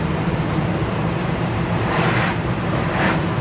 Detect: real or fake fake